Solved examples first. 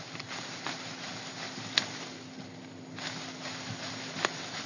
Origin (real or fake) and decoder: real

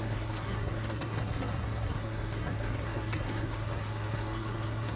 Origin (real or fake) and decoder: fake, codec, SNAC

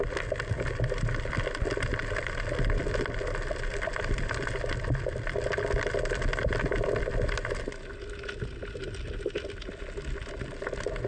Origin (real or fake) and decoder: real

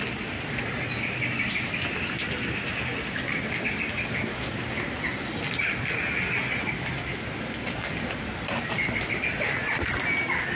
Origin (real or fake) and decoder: real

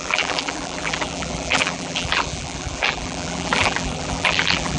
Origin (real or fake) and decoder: fake, vocoder, BigVGAN v2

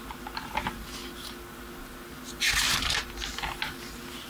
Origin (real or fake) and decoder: real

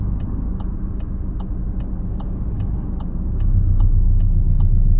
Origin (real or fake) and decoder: real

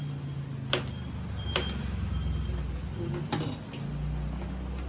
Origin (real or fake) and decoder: real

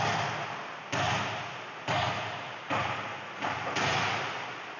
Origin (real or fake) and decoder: real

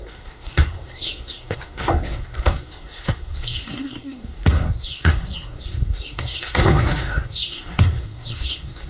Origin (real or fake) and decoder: fake, codec, SNAC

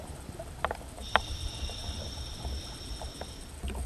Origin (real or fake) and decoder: fake, vocoder, BigVGAN v2